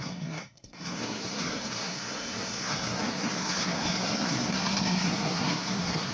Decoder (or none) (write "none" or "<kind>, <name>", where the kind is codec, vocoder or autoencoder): codec, SNAC